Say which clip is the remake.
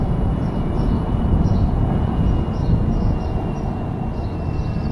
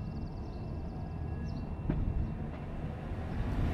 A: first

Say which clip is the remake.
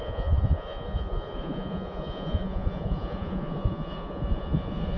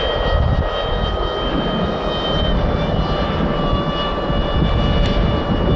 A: first